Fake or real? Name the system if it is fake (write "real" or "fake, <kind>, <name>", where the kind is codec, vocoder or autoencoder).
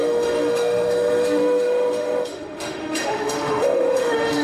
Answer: fake, autoencoder, DAC-VAE